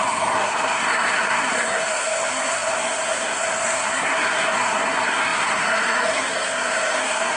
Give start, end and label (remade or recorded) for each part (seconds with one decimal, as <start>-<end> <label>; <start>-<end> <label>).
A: 0.0-7.4 remade